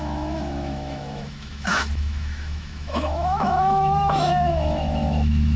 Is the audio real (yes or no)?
no